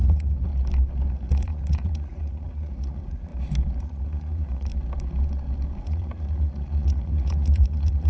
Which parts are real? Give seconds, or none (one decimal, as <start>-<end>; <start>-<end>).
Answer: 0.5-1.1; 3.3-3.8; 4.7-5.8